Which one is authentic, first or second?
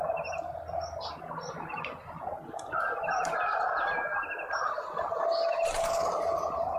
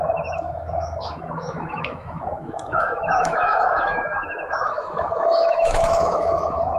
first